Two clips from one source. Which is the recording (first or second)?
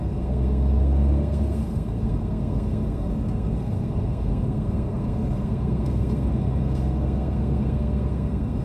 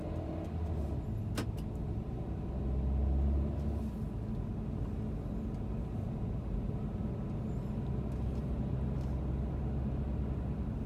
second